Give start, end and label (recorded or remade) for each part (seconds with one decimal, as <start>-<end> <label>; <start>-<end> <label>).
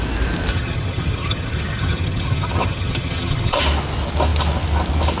0.0-0.5 recorded; 0.5-3.6 remade; 3.6-5.2 recorded